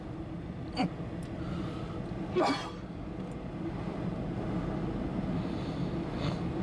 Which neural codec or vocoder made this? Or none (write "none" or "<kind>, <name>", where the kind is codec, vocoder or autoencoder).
none